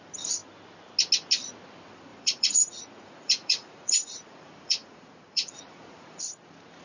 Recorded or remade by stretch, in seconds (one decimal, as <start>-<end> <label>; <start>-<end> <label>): 0.0-2.1 recorded; 2.1-6.2 remade; 6.2-6.8 recorded

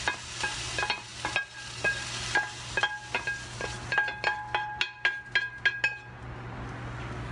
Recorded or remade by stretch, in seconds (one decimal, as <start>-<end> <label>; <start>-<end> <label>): 0.0-7.3 recorded

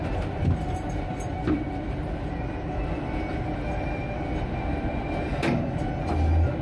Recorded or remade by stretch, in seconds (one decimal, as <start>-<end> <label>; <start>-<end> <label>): 0.0-6.6 recorded

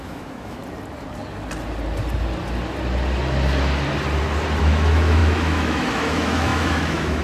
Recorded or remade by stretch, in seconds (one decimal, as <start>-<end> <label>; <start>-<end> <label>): 0.0-0.6 remade; 0.6-4.6 recorded; 4.6-7.2 remade

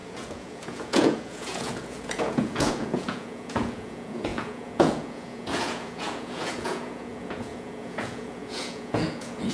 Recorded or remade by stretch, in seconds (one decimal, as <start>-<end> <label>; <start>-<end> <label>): 0.0-9.5 remade

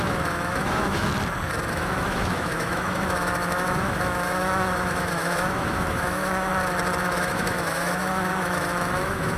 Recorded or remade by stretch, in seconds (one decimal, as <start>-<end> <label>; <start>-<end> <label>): 0.0-1.1 remade; 1.1-1.7 recorded; 1.7-6.5 remade; 6.5-7.0 recorded; 7.0-9.4 remade